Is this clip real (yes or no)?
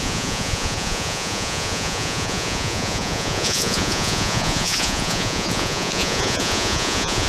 no